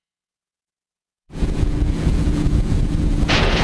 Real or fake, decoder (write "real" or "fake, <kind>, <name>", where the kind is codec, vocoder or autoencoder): fake, vocoder, Vocos